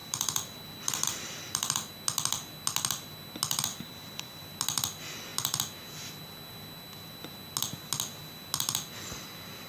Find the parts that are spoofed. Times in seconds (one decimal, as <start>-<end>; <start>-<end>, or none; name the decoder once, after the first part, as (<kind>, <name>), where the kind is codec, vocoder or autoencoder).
0.0-1.9 (vocoder, BigVGAN v2); 3.7-4.4